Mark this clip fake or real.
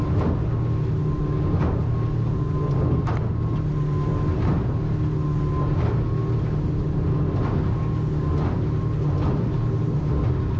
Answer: real